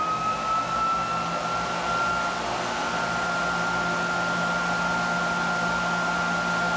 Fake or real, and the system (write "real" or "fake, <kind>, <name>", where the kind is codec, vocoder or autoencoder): real